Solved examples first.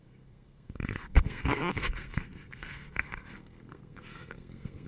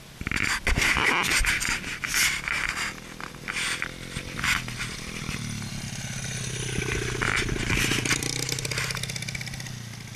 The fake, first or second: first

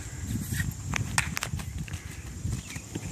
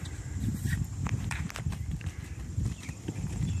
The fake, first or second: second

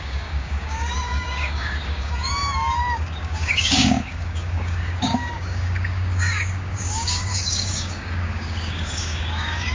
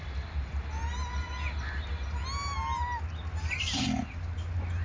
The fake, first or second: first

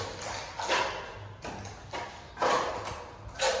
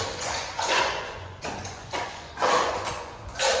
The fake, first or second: second